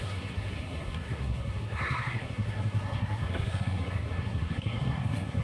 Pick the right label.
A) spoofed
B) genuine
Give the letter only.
A